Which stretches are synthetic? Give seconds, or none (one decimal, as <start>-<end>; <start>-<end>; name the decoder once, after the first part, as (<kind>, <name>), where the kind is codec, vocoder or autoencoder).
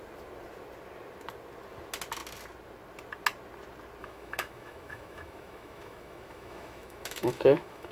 4.0-7.9 (autoencoder, DAC-VAE)